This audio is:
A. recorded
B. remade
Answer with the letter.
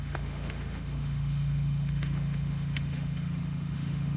B